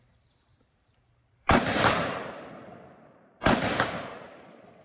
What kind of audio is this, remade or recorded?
remade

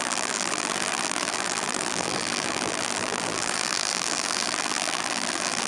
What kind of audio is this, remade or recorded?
remade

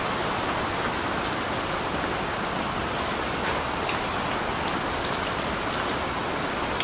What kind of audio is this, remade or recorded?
recorded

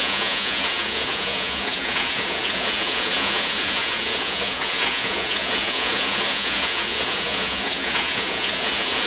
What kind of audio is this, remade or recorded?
remade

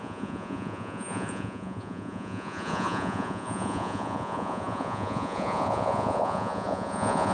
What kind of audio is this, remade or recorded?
remade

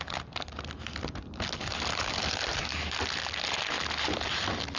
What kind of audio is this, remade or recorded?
recorded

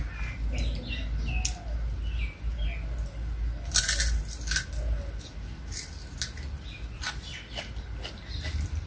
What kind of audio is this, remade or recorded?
recorded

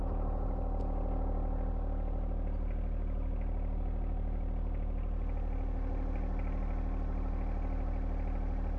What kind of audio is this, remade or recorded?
recorded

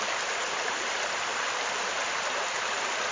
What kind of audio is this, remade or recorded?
recorded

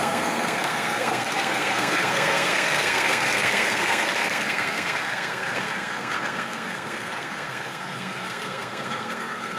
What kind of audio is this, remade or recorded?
remade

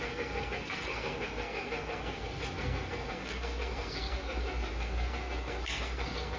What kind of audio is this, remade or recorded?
remade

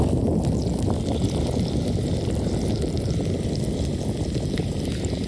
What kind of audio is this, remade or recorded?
recorded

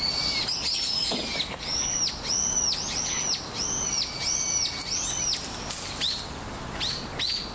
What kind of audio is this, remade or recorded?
recorded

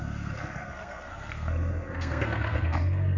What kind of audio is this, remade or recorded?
remade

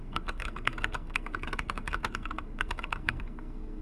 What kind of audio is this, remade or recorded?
remade